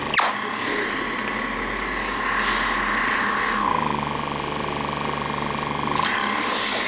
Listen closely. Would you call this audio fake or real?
real